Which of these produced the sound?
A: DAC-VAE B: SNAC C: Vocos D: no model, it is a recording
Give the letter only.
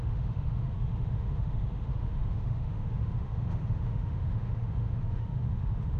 A